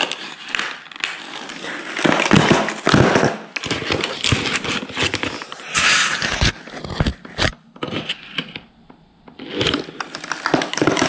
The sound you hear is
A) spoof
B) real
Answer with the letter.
B